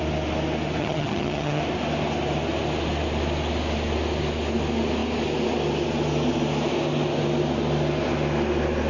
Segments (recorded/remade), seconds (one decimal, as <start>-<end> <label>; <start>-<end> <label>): 0.0-0.8 recorded; 0.8-1.6 remade; 1.6-8.9 recorded